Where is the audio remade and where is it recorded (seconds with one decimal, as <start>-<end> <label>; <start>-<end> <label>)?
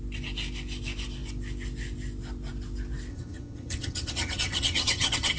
0.0-3.1 recorded; 3.1-5.4 remade